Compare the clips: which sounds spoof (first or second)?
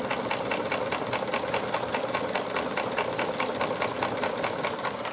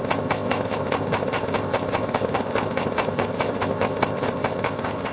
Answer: second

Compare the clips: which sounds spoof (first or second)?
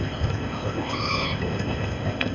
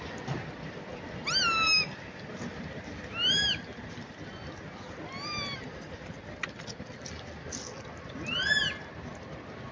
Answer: first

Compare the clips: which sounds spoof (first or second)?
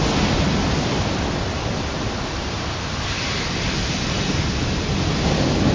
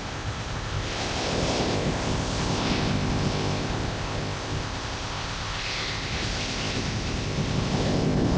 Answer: second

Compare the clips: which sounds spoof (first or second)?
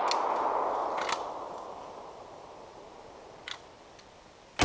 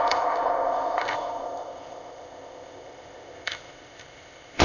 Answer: second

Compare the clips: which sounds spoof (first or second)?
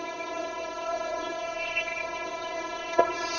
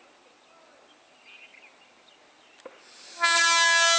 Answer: first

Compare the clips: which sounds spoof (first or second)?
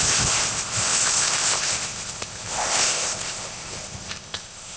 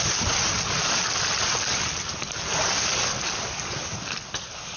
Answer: first